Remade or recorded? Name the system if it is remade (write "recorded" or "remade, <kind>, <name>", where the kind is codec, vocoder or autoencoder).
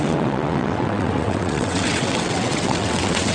remade, vocoder, WaveNeXt